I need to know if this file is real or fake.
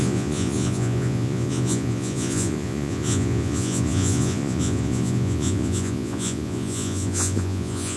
fake